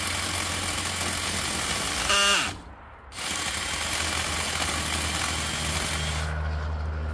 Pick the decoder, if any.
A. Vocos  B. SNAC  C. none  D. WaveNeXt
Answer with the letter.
C